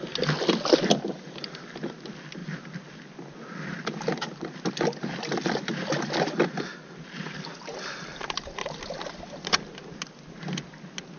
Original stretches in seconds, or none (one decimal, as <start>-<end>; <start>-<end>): 0.0-11.2